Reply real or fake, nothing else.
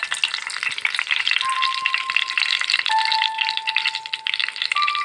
real